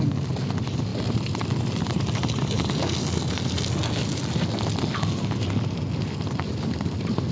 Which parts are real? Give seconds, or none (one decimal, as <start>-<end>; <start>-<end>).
0.0-0.9; 2.7-7.3